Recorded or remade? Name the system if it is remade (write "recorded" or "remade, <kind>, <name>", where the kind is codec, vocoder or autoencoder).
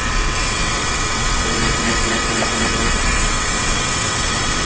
remade, vocoder, WaveNeXt